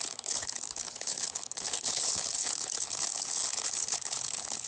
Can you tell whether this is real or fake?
fake